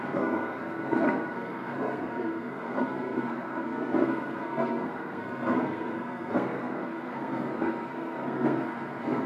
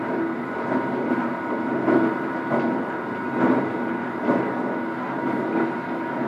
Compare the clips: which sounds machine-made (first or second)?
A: first